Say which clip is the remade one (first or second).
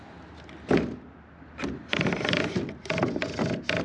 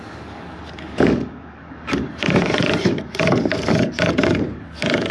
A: second